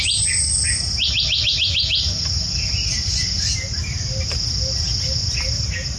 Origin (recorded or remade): recorded